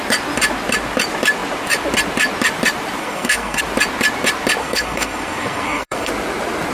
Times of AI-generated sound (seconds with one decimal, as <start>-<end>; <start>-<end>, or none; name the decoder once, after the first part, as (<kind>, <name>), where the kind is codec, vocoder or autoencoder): 3.0-3.6 (codec, SNAC); 4.6-6.1